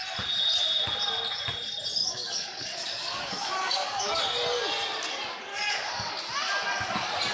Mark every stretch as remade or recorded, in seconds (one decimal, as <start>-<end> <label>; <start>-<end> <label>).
0.0-2.0 recorded; 2.0-4.2 remade; 4.2-5.5 recorded; 5.5-6.1 remade; 6.1-7.3 recorded